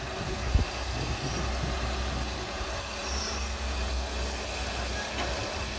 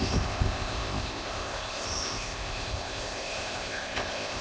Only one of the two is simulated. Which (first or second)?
second